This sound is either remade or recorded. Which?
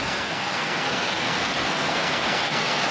remade